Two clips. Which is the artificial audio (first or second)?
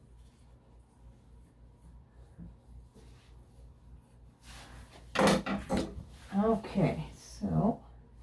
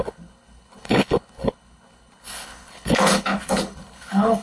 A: second